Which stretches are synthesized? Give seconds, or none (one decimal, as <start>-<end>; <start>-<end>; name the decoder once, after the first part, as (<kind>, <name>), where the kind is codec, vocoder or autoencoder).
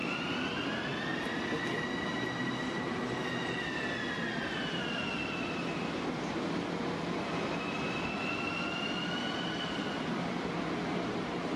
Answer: none